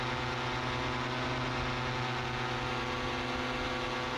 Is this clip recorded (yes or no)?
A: yes